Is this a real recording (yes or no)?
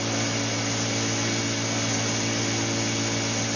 yes